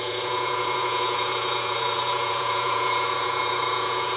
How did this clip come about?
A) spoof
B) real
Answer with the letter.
A